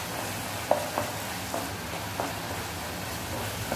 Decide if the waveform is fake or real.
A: real